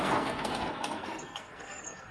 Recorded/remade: remade